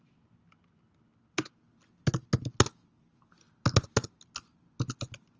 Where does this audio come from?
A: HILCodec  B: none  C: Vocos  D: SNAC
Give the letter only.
B